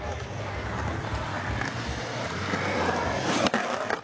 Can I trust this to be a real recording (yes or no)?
yes